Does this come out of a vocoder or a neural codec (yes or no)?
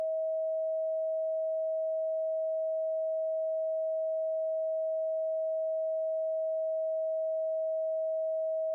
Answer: no